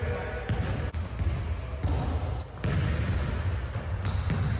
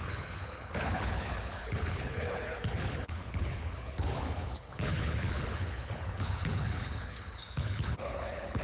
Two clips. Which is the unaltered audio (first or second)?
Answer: first